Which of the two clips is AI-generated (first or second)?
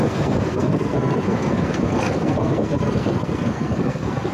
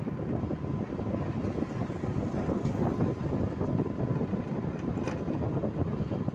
first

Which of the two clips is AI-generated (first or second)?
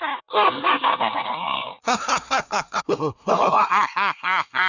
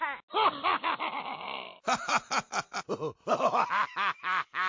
first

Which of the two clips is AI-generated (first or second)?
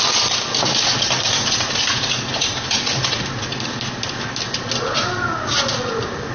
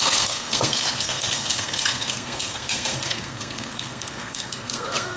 second